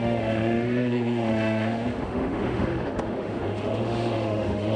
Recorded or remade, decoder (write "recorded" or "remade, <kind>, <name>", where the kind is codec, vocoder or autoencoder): remade, autoencoder, DAC-VAE